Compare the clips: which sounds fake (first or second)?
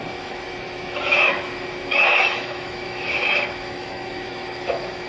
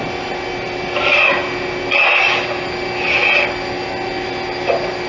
first